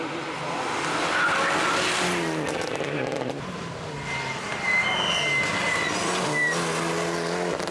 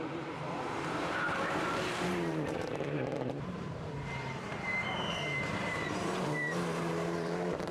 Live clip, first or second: first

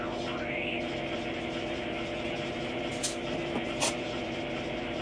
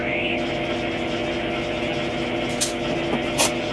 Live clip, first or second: second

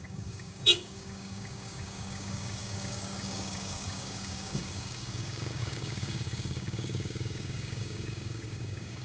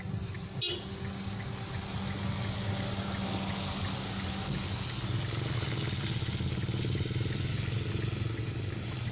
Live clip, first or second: second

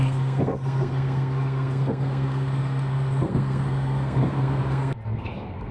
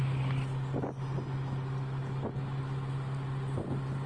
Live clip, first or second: second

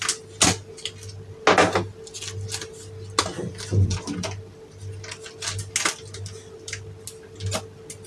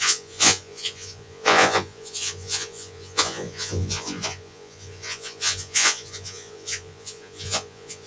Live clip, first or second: first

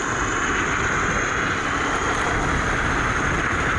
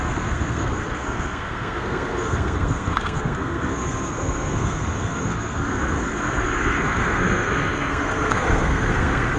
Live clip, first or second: first